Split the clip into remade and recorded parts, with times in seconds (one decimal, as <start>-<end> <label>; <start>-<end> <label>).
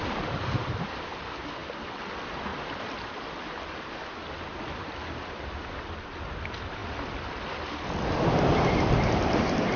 0.0-9.8 recorded